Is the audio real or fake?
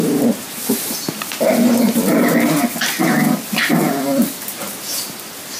real